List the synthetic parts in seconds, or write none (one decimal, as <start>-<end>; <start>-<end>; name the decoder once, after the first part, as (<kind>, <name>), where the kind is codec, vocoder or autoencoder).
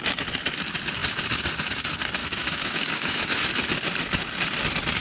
2.2-3.4 (autoencoder, DAC-VAE)